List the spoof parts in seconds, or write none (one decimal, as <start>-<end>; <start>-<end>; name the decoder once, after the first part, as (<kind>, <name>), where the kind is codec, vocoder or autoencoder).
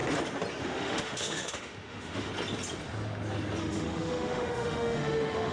0.6-2.3 (autoencoder, DAC-VAE); 3.6-5.5